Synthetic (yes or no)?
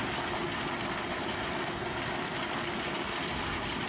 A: no